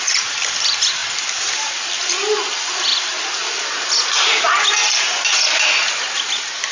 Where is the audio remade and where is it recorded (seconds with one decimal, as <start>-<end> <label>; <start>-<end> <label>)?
0.0-6.7 recorded